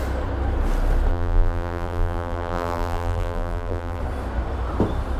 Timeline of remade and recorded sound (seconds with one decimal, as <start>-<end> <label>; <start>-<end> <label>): 0.0-1.1 recorded; 1.1-4.0 remade; 4.0-5.2 recorded